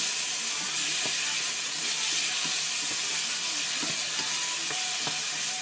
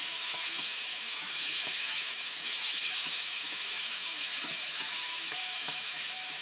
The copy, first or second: second